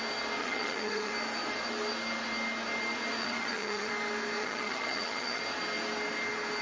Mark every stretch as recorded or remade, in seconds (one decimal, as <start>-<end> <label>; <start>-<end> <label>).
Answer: 0.0-0.4 recorded; 0.4-1.1 remade; 1.1-3.2 recorded; 3.2-3.9 remade; 3.9-4.4 recorded; 4.4-5.4 remade; 5.4-6.6 recorded